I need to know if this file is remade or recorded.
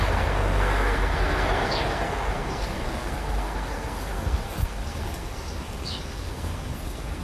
remade